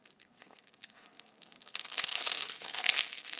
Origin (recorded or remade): remade